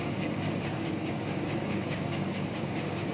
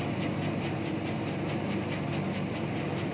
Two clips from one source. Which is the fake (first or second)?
first